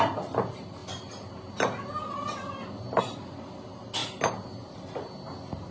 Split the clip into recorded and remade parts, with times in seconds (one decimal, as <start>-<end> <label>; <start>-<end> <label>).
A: 0.0-5.7 recorded